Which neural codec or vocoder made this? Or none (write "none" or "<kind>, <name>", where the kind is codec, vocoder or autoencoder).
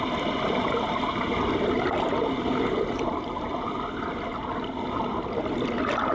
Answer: none